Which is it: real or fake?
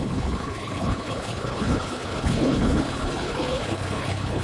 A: fake